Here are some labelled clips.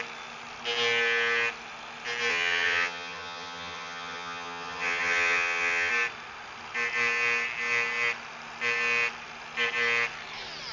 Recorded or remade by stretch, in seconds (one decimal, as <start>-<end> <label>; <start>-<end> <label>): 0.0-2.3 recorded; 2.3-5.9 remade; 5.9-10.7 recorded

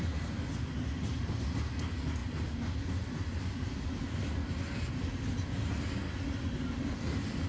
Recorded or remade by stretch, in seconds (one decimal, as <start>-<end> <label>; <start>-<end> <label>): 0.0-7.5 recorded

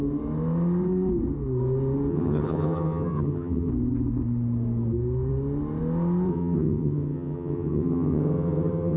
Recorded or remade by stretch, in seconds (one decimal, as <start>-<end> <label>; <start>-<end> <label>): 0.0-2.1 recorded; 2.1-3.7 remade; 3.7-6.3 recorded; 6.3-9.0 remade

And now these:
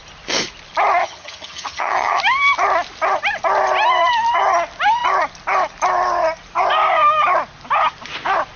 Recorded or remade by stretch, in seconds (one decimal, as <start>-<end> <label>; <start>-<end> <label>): 0.0-1.0 recorded; 1.0-2.2 remade; 2.2-8.6 recorded

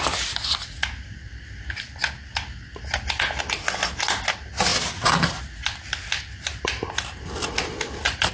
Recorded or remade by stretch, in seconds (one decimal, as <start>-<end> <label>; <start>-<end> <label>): 0.0-8.3 recorded

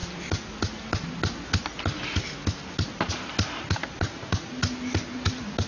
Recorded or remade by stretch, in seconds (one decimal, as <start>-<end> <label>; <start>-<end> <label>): 0.0-5.7 recorded

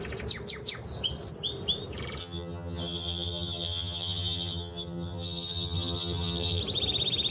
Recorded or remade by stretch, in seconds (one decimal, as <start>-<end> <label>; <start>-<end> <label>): 0.0-2.2 recorded; 2.2-6.6 remade; 6.6-7.3 recorded

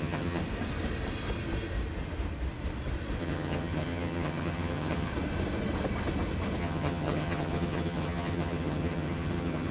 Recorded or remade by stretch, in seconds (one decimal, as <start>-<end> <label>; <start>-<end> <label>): 0.0-0.4 remade; 0.4-3.2 recorded; 3.2-5.1 remade; 5.1-6.6 recorded; 6.6-9.7 remade